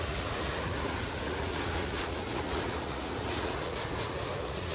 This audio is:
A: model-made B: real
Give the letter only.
A